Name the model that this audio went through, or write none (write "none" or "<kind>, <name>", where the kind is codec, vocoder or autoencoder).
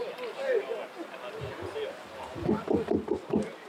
none